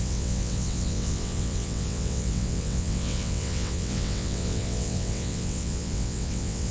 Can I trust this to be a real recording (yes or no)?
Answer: no